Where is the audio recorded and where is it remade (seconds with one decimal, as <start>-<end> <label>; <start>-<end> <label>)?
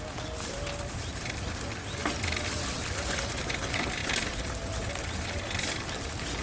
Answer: 0.0-6.4 recorded